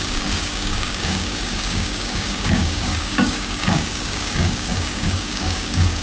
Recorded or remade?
remade